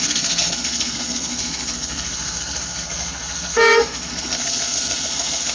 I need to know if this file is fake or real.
fake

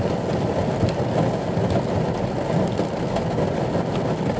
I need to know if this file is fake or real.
real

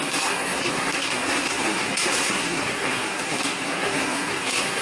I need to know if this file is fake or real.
fake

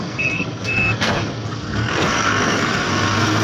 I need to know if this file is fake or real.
fake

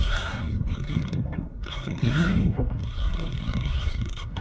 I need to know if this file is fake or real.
fake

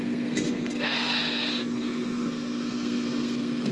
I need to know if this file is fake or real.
fake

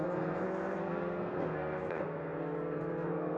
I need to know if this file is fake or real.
fake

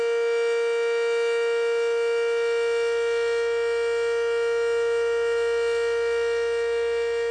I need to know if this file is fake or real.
real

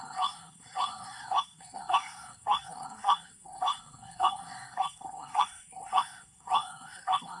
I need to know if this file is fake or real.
fake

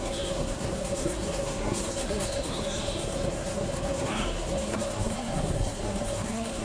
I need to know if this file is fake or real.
fake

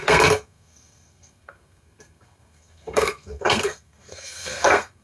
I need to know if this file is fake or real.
fake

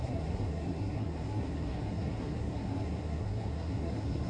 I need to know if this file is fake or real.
fake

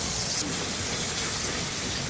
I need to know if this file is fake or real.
real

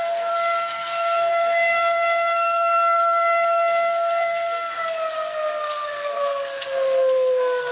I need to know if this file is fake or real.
fake